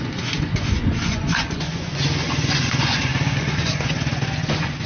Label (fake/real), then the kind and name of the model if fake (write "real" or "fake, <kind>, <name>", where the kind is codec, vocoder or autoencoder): fake, vocoder, Vocos